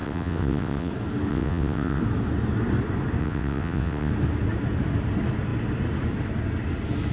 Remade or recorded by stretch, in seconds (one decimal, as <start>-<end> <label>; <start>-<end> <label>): 0.0-0.9 remade; 0.9-1.3 recorded; 1.3-2.0 remade; 2.0-3.2 recorded; 3.2-4.1 remade; 4.1-7.1 recorded